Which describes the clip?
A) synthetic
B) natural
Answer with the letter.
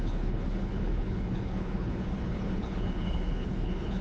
A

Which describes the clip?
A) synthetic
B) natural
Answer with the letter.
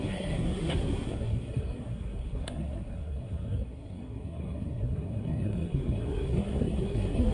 A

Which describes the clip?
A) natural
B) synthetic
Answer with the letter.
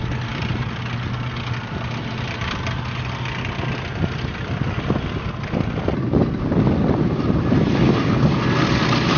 A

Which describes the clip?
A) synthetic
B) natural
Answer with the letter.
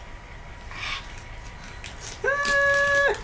B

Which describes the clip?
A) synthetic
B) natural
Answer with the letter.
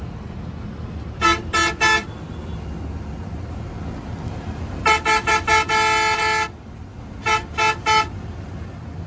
B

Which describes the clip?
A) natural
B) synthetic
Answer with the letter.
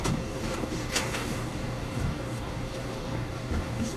B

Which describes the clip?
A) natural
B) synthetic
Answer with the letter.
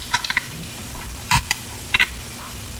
B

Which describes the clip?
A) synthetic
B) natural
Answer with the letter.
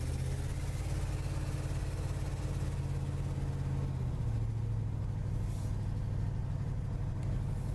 B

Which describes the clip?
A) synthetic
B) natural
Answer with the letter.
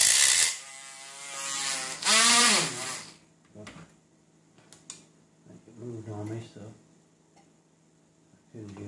B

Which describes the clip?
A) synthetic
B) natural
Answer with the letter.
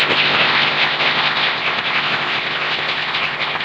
A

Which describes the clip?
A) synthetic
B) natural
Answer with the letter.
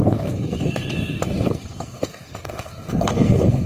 A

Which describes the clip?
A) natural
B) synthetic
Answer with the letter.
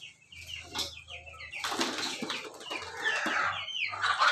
A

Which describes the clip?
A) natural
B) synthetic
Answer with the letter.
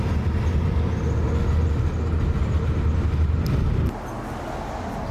A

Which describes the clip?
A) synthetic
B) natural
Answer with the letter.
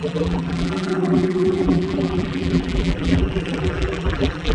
A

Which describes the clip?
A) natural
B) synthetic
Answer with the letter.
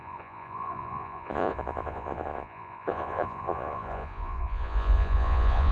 B